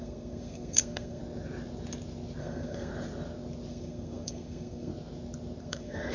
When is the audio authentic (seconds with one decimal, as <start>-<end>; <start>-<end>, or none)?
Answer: 1.2-2.4; 2.9-3.7; 4.9-5.6